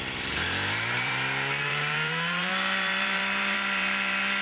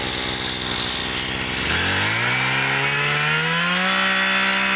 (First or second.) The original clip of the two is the second